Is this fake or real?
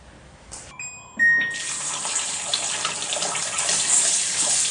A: real